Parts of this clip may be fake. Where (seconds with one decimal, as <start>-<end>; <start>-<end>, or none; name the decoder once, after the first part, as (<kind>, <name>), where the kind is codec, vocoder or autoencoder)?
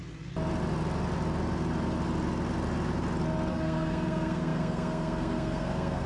3.5-6.1 (codec, SNAC)